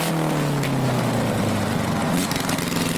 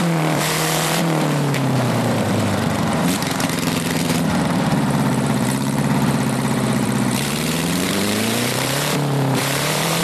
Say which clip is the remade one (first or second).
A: second